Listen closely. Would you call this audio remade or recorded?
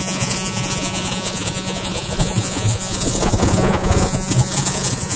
remade